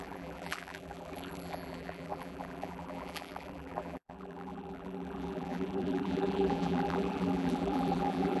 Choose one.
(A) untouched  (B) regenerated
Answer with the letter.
B